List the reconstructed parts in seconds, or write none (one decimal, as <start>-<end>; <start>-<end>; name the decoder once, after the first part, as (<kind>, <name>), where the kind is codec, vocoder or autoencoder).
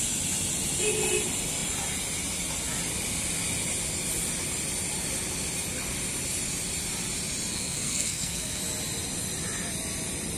7.5-8.6 (codec, SNAC)